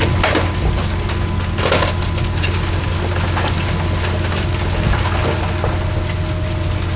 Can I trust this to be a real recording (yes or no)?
yes